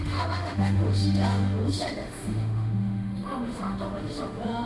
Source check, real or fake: fake